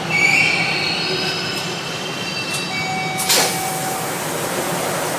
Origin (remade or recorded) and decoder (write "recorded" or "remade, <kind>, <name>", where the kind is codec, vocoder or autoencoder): recorded